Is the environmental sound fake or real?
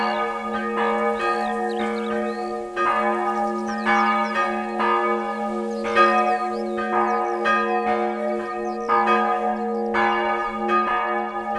real